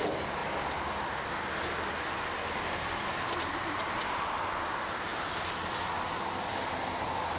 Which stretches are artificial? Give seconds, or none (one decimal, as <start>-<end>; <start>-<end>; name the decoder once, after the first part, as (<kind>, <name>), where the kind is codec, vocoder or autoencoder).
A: none